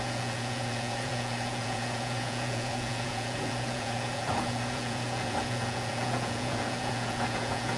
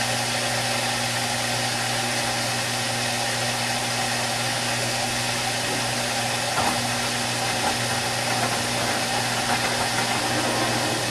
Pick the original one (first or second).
second